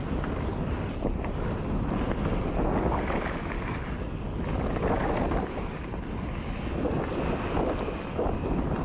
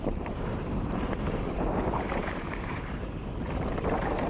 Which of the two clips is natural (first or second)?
first